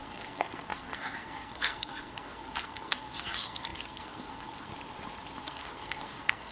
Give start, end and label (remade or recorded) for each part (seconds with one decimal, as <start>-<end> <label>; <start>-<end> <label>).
0.0-4.7 remade; 4.7-5.4 recorded; 5.4-6.5 remade

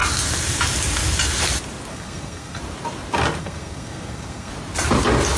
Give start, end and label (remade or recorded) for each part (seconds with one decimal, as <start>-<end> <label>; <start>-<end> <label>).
0.0-1.9 recorded; 1.9-2.6 remade; 2.6-3.4 recorded; 3.4-4.5 remade; 4.5-5.4 recorded